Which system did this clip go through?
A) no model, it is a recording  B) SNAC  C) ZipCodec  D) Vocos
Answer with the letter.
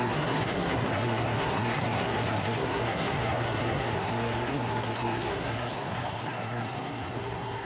B